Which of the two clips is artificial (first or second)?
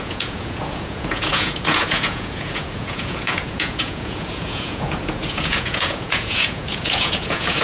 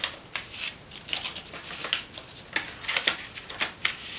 first